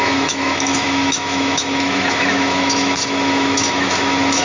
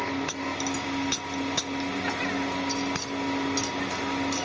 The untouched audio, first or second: second